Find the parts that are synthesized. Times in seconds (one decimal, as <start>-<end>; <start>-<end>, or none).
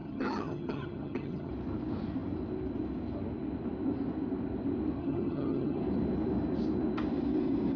0.0-1.5; 5.0-5.8